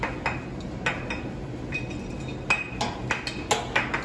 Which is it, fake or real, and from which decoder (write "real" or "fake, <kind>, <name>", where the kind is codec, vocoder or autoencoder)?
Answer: real